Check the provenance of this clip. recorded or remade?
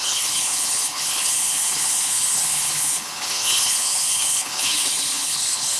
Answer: remade